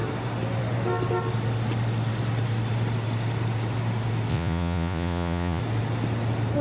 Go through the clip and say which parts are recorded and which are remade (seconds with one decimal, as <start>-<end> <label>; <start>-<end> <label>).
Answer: 0.0-4.3 recorded; 4.3-5.6 remade; 5.6-6.6 recorded